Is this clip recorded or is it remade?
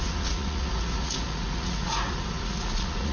remade